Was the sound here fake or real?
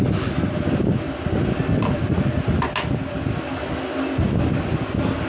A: real